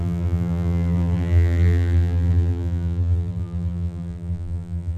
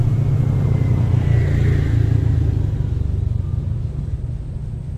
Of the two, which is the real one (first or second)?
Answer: second